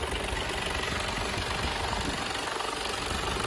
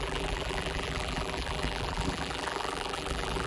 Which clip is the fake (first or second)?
second